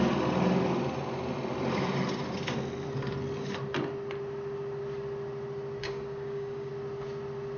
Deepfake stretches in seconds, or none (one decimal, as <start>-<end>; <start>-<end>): 5.8-6.7